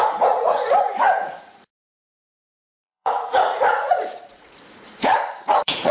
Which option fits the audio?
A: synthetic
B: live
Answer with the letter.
A